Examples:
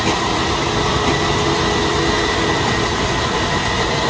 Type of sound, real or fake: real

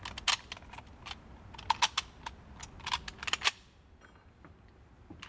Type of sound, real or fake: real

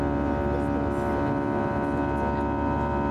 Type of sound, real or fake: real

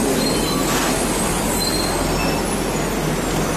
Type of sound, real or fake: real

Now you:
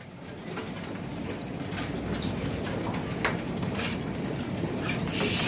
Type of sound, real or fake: fake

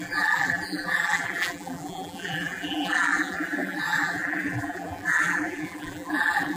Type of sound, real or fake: fake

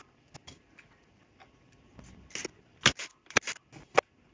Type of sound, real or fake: real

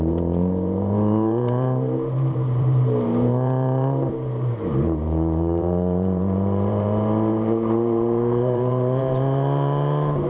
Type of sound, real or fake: fake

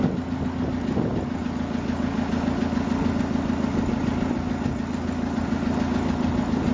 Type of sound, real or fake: real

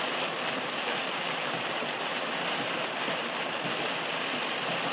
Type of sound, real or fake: fake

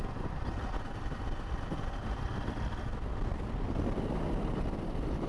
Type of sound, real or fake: real